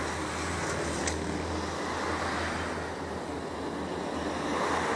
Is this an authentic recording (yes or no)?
yes